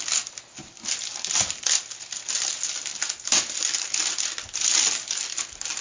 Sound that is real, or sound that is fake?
real